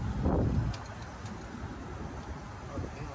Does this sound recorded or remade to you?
recorded